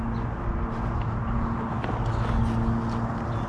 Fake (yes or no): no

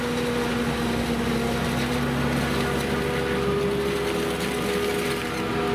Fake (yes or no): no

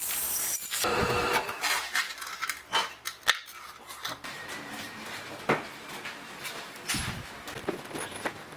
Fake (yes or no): yes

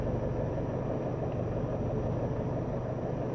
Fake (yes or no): no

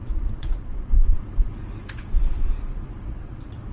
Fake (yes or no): yes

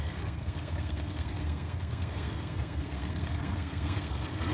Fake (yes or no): yes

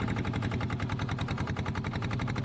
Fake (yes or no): no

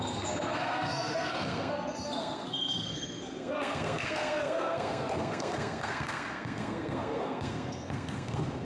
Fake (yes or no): yes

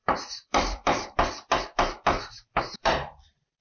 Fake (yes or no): yes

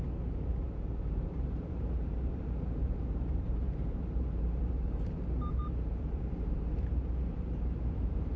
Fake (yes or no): yes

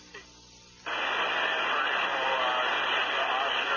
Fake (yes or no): no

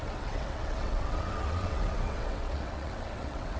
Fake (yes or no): yes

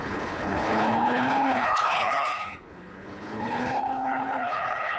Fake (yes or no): yes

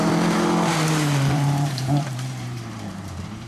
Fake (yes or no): yes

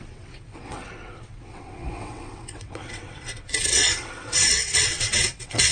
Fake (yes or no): yes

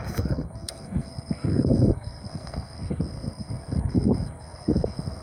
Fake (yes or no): yes